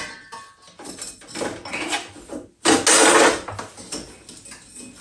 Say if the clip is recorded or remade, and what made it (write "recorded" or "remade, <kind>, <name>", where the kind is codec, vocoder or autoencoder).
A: recorded